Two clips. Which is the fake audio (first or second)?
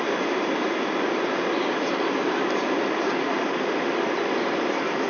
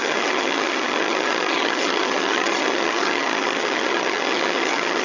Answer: second